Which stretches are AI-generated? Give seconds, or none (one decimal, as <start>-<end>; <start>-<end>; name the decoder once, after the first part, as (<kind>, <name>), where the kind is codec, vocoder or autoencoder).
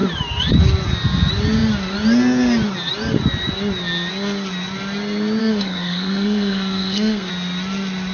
5.4-7.3 (codec, SNAC)